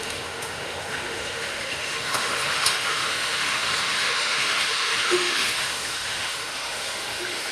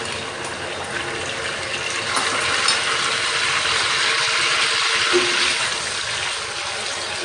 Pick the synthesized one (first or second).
first